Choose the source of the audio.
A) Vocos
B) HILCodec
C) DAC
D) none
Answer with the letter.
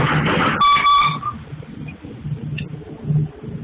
D